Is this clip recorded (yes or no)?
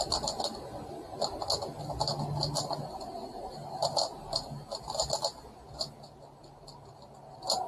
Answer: yes